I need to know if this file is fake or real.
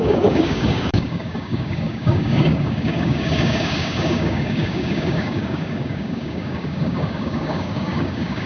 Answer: fake